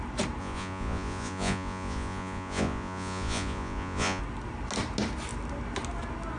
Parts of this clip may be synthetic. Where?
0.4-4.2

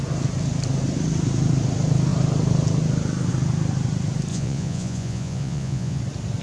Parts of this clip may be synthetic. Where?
4.3-6.0